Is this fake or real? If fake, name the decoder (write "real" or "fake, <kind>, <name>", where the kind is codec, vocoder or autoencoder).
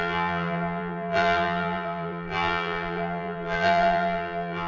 fake, vocoder, BigVGAN v2